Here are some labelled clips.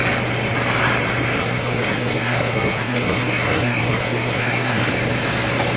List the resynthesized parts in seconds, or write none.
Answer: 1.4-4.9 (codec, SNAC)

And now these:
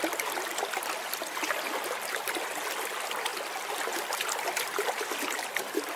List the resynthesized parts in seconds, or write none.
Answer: none

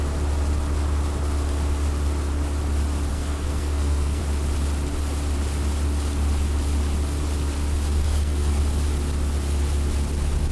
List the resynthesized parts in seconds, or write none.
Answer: 3.1-4.2 (codec, SNAC); 8.0-8.6

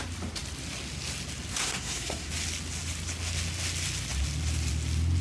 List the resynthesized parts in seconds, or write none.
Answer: 1.5-2.3 (codec, SNAC)

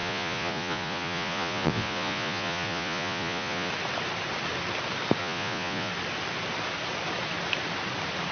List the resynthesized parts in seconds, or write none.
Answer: 0.0-3.7 (vocoder, Vocos); 5.2-5.9

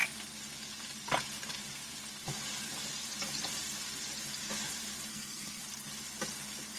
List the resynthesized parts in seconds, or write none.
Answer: 5.1-5.6 (codec, SNAC)

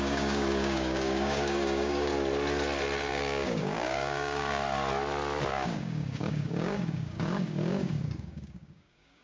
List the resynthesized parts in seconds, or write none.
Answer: 0.0-2.1 (codec, DAC); 3.1-4.6; 5.5-9.2